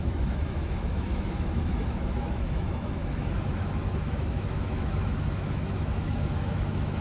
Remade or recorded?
remade